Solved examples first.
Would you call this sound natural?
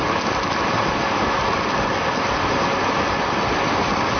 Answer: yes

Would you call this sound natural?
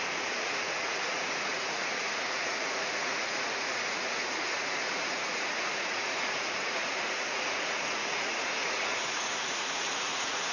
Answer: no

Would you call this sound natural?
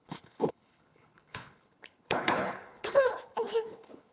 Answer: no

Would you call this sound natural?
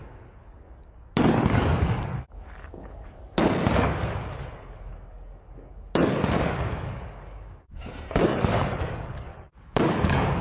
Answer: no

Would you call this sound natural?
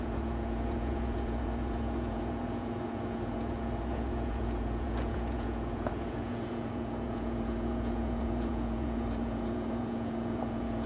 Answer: no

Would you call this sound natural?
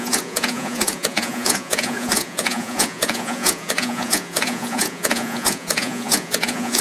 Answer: no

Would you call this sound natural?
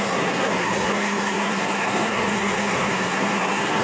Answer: no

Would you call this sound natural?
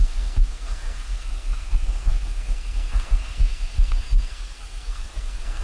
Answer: no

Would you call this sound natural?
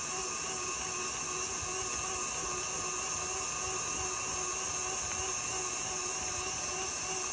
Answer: yes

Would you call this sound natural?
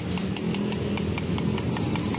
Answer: yes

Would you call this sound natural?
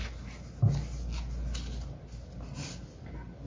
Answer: yes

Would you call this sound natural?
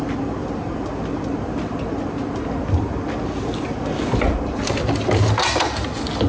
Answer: yes